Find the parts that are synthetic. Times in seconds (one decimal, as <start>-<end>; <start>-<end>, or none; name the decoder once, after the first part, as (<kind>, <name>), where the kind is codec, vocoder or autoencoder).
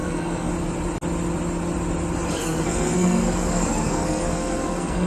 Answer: 0.0-0.5 (codec, SNAC); 2.3-5.1